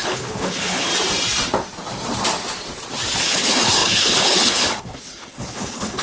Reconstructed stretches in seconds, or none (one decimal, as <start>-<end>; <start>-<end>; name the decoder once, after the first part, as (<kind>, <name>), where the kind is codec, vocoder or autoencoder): 0.0-0.9 (codec, HILCodec); 3.2-6.0